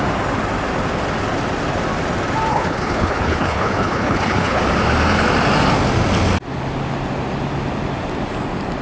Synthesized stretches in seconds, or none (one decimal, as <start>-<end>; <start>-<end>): 2.5-4.6